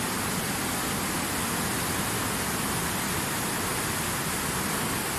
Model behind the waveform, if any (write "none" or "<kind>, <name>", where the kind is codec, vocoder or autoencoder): none